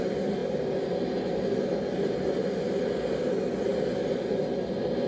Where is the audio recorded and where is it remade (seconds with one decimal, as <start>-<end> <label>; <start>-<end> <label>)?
0.0-5.1 recorded